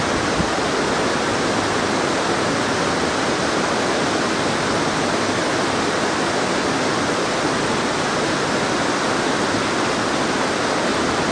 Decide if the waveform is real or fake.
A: real